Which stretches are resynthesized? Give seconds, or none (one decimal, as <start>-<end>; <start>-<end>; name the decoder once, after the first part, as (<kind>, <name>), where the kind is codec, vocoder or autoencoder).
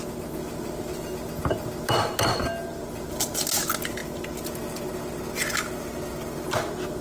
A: none